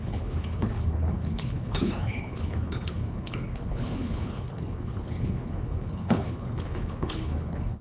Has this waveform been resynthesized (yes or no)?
yes